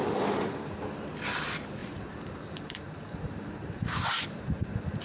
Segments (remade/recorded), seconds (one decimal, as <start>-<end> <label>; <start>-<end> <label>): 0.0-1.8 recorded; 1.8-5.0 remade